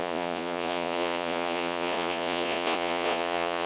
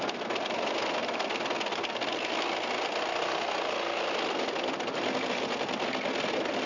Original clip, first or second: second